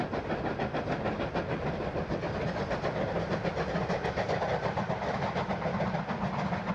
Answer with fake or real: real